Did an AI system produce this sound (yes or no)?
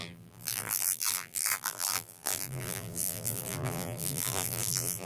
yes